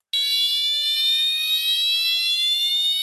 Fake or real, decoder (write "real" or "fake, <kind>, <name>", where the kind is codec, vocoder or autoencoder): real